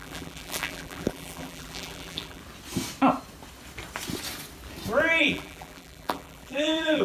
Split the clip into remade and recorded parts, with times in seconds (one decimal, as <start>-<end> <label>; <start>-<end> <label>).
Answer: 0.0-2.4 remade; 2.4-5.2 recorded; 5.2-7.0 remade